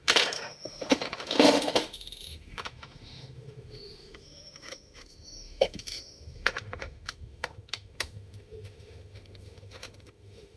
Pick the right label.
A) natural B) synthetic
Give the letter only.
B